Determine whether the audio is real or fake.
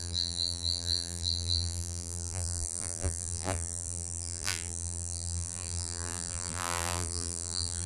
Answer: fake